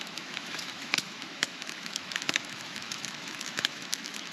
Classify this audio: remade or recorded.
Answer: remade